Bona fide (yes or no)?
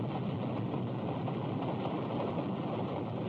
yes